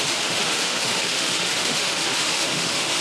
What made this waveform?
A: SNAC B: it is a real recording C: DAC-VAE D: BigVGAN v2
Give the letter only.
C